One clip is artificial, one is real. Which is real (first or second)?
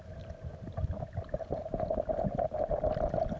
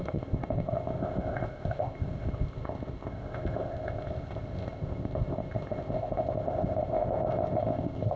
first